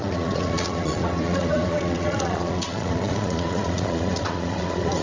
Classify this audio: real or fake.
fake